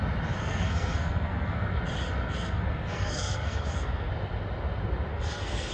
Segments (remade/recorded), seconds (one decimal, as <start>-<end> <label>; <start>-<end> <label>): 0.0-0.4 recorded; 0.4-1.8 remade; 1.8-2.2 recorded; 2.2-4.1 remade; 4.1-5.1 recorded; 5.1-5.7 remade